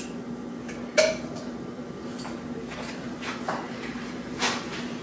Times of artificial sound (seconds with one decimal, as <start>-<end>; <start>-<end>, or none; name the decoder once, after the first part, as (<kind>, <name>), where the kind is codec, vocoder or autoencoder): none